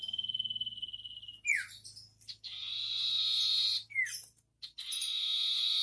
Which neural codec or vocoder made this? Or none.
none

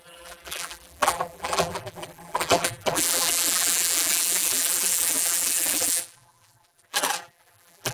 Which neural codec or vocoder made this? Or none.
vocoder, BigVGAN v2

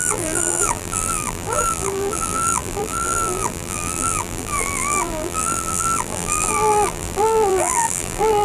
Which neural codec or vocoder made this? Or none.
vocoder, BigVGAN v2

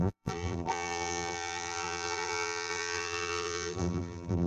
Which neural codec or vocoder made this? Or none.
vocoder, BigVGAN v2